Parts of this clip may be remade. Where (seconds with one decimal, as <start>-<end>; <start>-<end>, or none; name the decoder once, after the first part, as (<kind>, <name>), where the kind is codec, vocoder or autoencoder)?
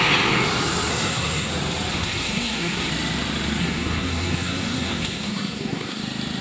0.9-1.5 (codec, SNAC); 1.9-2.9; 3.6-6.0